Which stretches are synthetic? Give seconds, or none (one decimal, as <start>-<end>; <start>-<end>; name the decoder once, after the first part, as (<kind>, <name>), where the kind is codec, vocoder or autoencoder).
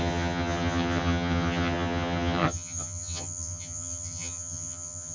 0.0-5.1 (vocoder, HiFi-GAN)